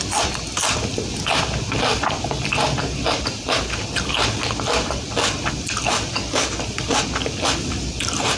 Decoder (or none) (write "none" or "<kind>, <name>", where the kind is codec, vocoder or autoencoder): none